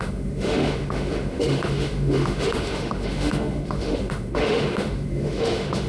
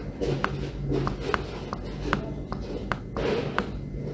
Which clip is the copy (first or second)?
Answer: first